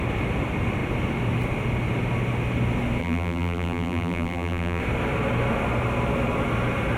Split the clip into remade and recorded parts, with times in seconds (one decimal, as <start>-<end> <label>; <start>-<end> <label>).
0.0-3.0 recorded; 3.0-4.8 remade; 4.8-7.0 recorded